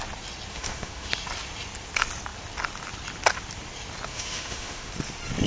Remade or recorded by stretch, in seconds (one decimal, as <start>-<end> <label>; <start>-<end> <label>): 0.0-0.5 recorded; 0.5-1.1 remade; 1.1-4.1 recorded; 4.1-4.9 remade; 4.9-5.5 recorded